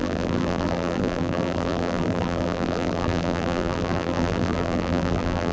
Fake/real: fake